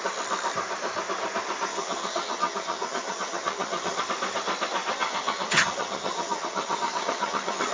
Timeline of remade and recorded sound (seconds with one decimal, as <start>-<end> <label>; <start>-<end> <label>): 0.0-1.7 recorded; 1.7-4.0 remade; 4.0-4.9 recorded; 4.9-7.7 remade